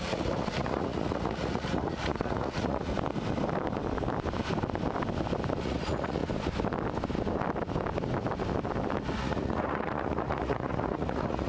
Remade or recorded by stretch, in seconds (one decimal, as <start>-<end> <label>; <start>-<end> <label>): 0.0-2.9 remade; 2.9-5.6 recorded; 5.6-6.2 remade; 6.2-9.2 recorded; 9.2-11.5 remade